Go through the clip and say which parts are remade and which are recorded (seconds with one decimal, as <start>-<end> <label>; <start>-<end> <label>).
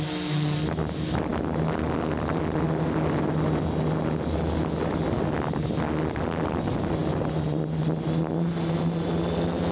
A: 0.0-9.7 recorded